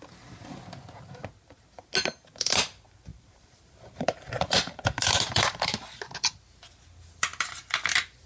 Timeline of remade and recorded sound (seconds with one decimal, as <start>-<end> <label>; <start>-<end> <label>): 0.0-3.1 recorded; 3.1-4.7 remade; 4.7-8.3 recorded